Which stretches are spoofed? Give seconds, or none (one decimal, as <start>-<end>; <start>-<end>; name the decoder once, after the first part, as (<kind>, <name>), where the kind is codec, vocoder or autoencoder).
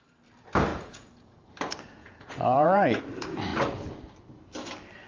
0.7-1.5 (vocoder, Vocos); 2.0-3.0